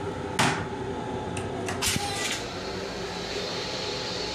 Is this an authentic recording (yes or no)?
yes